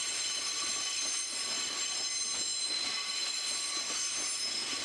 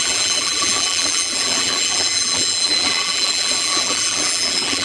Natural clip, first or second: first